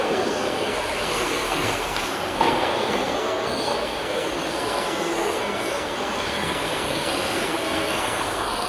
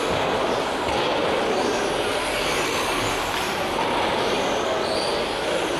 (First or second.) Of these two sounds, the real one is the second